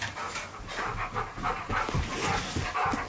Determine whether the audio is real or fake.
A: real